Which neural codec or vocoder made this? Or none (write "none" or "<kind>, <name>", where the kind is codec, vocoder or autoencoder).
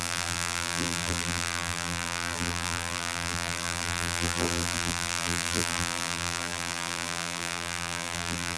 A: vocoder, BigVGAN v2